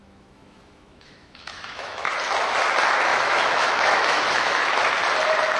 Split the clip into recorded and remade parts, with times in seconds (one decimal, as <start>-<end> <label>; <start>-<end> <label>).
0.0-2.1 remade; 2.1-3.1 recorded; 3.1-4.9 remade; 4.9-5.6 recorded